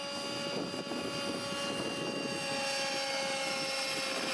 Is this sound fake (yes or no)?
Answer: no